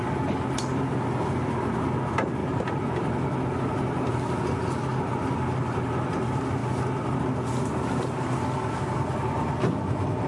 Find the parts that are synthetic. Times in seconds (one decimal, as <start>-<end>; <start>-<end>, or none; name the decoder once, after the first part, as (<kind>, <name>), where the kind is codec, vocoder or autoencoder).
none